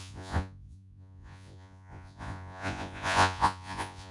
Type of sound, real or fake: fake